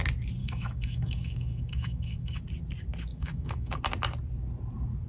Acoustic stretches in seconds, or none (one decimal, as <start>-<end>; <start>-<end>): 0.0-0.4; 2.4-3.1; 3.7-5.1